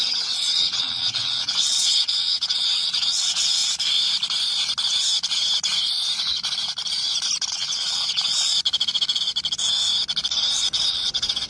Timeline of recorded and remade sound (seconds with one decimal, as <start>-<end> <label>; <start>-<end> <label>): 0.0-3.6 remade; 3.6-7.5 recorded; 7.5-8.3 remade; 8.3-10.9 recorded; 10.9-11.5 remade